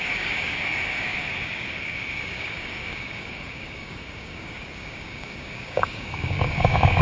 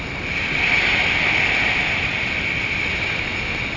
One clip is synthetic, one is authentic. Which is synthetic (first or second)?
first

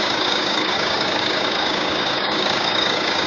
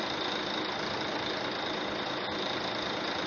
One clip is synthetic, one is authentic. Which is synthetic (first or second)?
first